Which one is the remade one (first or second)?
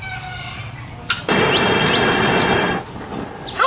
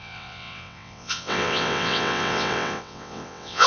second